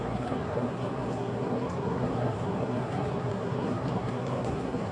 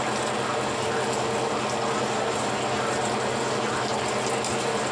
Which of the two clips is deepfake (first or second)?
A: first